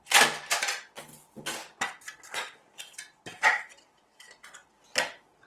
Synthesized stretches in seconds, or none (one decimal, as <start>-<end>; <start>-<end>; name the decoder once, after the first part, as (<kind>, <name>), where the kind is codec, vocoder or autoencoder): none